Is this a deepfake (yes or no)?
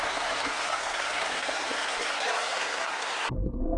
yes